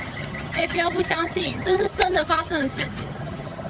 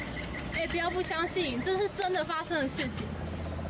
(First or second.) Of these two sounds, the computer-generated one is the first